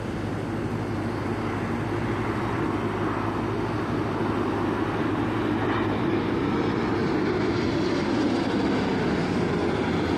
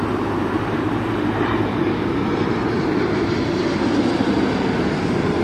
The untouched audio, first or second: first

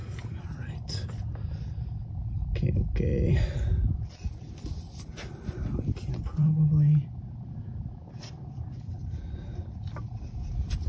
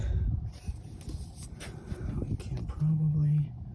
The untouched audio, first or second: second